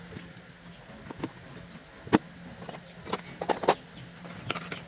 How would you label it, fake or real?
real